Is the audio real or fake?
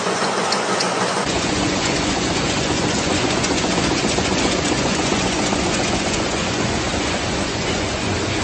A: fake